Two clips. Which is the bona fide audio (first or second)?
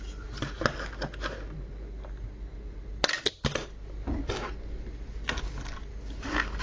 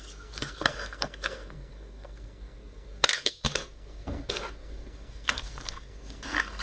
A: first